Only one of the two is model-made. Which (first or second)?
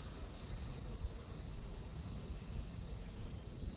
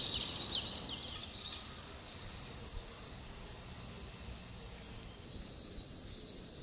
first